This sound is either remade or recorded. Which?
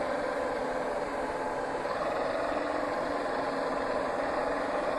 remade